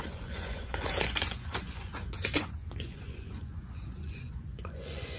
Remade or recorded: remade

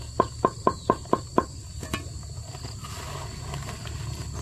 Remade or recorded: recorded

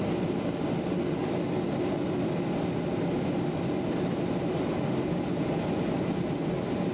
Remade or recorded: recorded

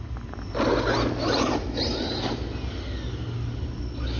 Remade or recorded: recorded